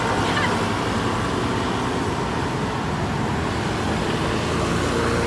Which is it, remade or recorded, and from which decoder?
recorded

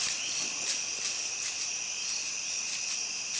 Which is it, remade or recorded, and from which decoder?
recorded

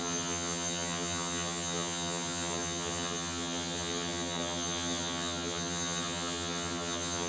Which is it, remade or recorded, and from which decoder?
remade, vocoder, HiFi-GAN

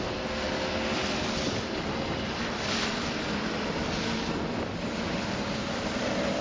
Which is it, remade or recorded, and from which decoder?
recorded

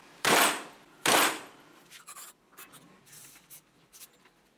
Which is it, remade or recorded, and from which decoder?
remade, vocoder, BigVGAN v2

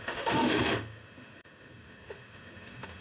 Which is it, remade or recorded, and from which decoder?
remade, autoencoder, DAC-VAE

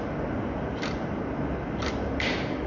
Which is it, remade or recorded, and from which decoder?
recorded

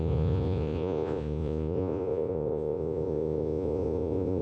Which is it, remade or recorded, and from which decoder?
remade, vocoder, Vocos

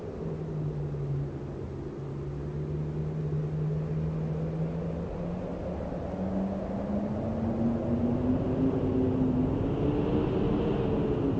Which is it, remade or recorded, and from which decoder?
recorded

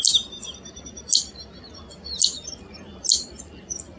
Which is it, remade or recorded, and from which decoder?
recorded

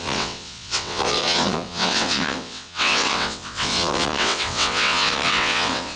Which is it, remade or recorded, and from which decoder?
remade, vocoder, WaveNeXt